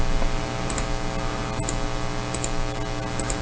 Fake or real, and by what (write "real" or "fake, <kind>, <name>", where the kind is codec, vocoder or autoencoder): real